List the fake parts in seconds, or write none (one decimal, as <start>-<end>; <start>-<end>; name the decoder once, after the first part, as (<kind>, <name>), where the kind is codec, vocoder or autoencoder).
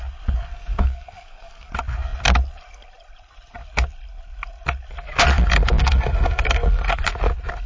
0.4-1.7 (codec, SNAC); 5.8-7.0